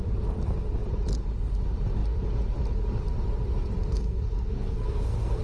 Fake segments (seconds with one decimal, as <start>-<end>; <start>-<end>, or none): 3.9-5.4